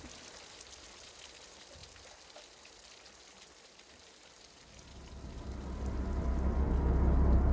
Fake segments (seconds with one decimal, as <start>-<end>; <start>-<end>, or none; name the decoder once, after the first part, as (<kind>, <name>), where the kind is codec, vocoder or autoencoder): none